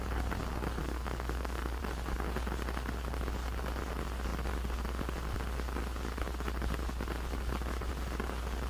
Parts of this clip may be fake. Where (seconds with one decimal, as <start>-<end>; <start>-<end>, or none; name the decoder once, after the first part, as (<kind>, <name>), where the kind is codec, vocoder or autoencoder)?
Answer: 0.8-1.8 (codec, SNAC)